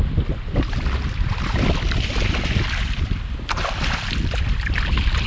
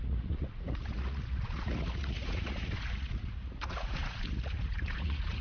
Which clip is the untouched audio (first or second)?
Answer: first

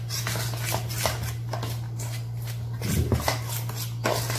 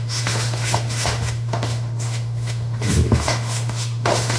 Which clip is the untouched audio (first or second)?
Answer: first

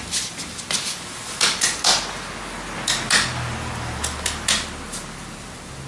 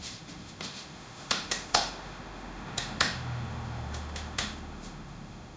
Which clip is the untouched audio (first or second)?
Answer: first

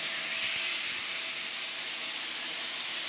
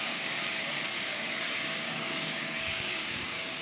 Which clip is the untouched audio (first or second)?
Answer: first